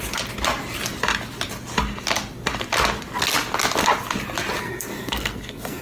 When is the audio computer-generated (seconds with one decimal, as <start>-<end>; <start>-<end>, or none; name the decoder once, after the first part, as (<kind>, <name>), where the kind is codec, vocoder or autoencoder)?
4.6-5.8 (codec, SNAC)